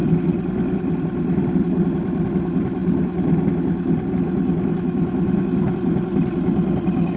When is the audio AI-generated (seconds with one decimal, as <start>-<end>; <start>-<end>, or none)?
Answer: 0.0-1.5